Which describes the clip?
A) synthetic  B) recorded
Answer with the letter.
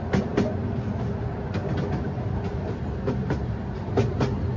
B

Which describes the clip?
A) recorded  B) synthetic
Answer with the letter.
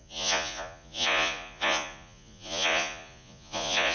B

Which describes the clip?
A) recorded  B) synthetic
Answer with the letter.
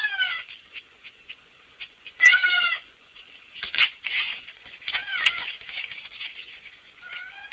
B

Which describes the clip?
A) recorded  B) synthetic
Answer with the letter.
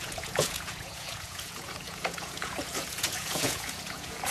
B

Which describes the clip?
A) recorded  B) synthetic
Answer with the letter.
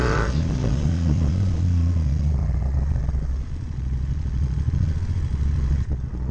B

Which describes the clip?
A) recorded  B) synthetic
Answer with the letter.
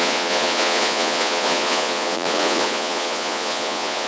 B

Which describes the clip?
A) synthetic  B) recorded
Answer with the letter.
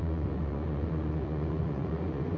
A